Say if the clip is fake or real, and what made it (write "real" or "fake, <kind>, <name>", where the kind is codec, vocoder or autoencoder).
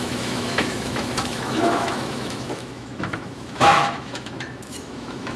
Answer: fake, autoencoder, DAC-VAE